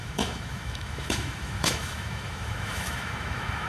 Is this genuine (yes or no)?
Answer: no